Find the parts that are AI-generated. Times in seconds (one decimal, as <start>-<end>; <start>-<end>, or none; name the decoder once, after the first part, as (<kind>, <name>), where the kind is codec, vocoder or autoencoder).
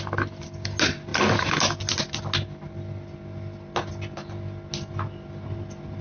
none